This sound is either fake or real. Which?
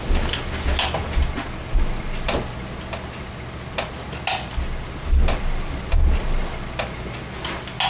real